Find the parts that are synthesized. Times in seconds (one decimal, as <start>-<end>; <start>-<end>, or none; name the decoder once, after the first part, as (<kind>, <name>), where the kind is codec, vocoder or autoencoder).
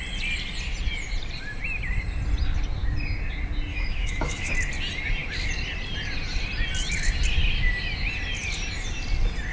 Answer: 3.7-4.5 (autoencoder, DAC-VAE)